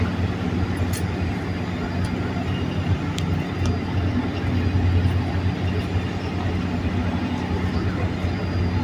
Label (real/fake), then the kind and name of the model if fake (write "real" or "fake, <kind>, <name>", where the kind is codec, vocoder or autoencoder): real